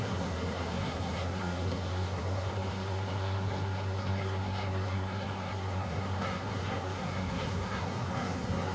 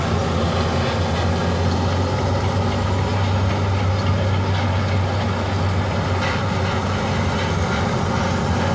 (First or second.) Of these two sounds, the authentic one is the second